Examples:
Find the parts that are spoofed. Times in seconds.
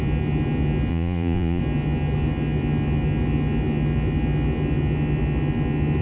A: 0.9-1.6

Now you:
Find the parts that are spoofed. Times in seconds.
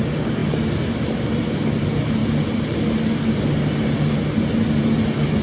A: none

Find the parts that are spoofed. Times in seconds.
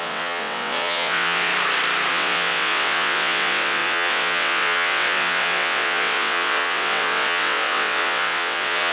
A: 0.0-1.5; 2.1-8.9